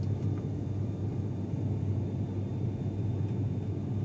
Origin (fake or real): real